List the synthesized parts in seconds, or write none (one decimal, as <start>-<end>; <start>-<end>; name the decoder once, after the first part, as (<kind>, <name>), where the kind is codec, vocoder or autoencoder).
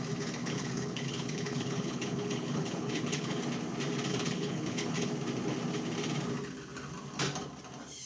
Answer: 0.4-3.4 (codec, HILCodec); 4.1-5.1